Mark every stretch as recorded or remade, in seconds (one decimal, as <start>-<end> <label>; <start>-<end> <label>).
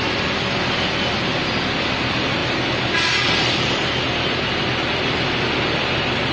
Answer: 0.0-6.3 recorded